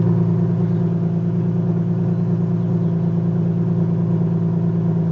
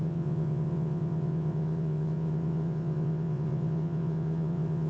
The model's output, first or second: second